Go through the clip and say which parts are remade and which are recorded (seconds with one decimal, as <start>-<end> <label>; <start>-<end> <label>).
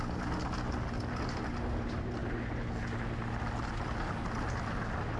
0.0-5.2 recorded